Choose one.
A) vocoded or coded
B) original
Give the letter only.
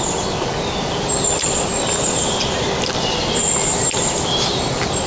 B